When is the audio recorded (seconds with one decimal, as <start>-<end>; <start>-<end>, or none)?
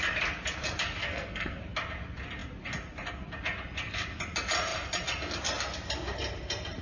0.0-1.0; 1.6-6.8